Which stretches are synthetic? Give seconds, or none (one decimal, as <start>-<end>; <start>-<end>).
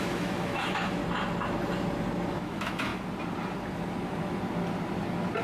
0.0-1.0; 2.3-2.9